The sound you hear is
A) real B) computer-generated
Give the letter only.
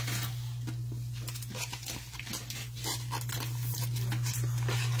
A